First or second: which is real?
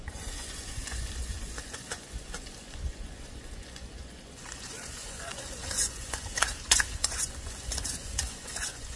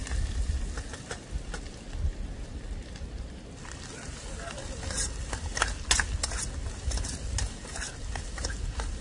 second